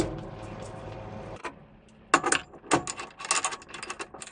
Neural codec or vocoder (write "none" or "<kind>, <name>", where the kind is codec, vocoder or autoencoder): none